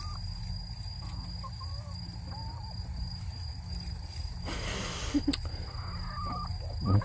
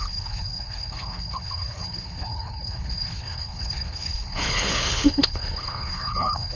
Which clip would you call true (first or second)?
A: first